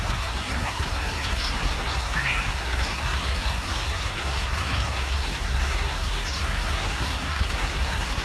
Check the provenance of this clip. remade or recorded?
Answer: remade